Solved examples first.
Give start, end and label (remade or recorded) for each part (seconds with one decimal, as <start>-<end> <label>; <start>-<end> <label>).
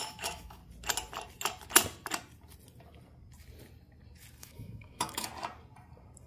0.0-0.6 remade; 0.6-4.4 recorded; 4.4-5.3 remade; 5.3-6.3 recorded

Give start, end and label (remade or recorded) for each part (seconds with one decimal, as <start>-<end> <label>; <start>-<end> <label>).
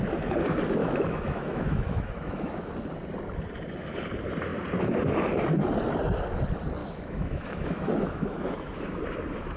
0.0-0.8 recorded; 0.8-2.7 remade; 2.7-6.8 recorded; 6.8-9.0 remade; 9.0-9.6 recorded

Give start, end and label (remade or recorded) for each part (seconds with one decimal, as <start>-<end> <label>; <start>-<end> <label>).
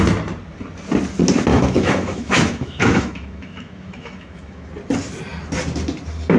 0.0-1.5 recorded; 1.5-4.7 remade; 4.7-6.4 recorded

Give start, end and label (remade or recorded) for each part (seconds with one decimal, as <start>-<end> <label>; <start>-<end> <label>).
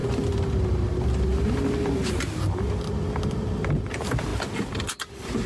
0.0-5.5 recorded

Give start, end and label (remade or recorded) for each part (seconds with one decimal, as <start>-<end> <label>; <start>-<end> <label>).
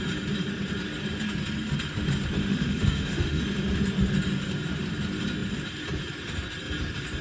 0.0-2.4 recorded; 2.4-3.4 remade; 3.4-7.2 recorded